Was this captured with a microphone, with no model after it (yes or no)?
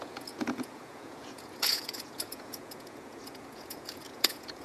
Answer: no